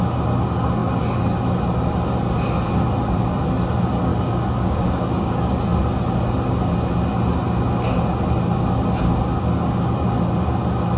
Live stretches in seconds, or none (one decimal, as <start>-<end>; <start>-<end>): 0.0-4.1; 5.3-11.0